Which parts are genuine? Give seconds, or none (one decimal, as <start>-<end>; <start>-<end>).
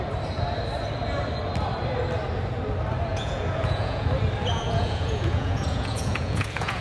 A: 0.0-3.1; 4.1-4.5